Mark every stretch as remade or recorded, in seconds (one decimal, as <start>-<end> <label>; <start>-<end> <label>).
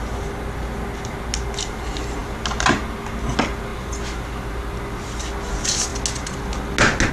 0.0-7.1 recorded